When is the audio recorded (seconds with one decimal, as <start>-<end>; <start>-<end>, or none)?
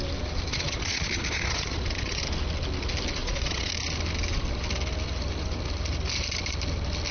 0.0-0.5; 2.2-3.2; 3.7-7.1